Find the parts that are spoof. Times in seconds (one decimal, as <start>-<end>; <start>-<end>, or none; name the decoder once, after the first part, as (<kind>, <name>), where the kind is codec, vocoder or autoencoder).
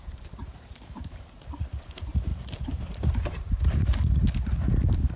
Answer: 0.0-2.3 (vocoder, BigVGAN v2); 2.9-5.2